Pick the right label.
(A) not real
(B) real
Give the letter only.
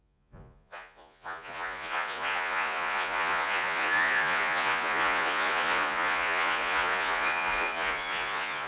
A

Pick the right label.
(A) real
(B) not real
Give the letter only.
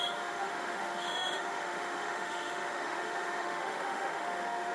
B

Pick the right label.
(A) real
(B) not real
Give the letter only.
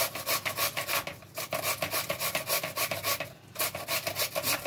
A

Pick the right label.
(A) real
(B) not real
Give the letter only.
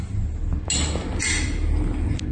A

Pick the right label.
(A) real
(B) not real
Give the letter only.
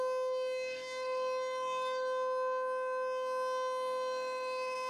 B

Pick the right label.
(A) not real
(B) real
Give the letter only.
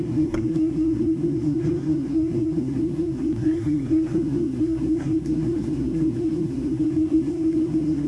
A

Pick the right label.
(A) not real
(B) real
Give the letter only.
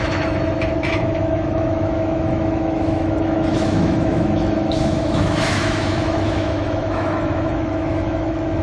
A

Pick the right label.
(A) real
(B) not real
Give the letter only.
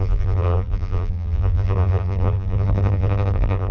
B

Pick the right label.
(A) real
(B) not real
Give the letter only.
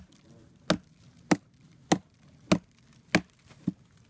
A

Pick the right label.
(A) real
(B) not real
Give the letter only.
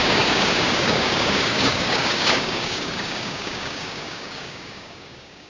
B